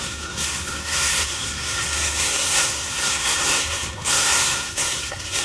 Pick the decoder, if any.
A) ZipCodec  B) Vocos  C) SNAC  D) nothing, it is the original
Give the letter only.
C